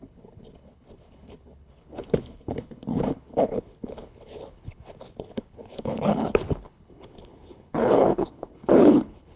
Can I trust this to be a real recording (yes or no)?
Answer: no